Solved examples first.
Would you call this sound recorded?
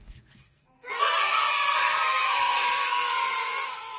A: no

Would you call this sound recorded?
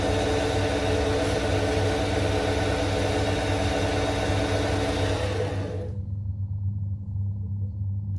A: yes